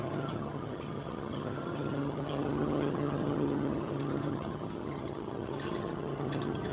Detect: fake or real fake